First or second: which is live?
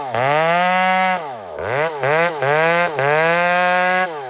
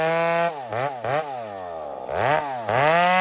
second